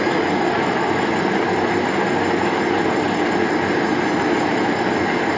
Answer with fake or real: real